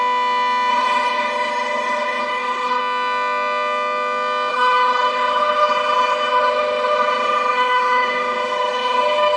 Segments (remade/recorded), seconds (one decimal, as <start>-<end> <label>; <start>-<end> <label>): 0.0-0.7 recorded; 0.7-2.8 remade; 2.8-4.5 recorded; 4.5-9.4 remade

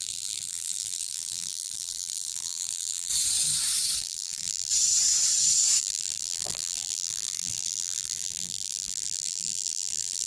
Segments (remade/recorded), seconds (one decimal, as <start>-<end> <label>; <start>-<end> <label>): 0.0-3.1 remade; 3.1-4.0 recorded; 4.0-4.7 remade; 4.7-5.8 recorded; 5.8-10.3 remade

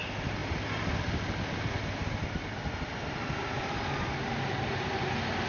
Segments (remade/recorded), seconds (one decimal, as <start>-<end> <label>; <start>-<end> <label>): 0.0-5.5 recorded

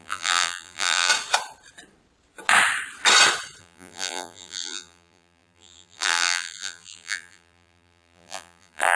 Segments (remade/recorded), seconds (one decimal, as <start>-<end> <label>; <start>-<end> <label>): 0.0-1.1 remade; 1.1-3.6 recorded; 3.6-9.0 remade

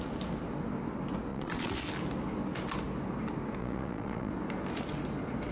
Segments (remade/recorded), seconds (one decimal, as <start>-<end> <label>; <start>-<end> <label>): 0.0-1.3 recorded; 1.3-1.8 remade; 1.8-3.6 recorded; 3.6-4.3 remade; 4.3-5.5 recorded